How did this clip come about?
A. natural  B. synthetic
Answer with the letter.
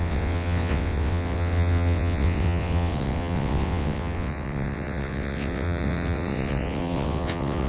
B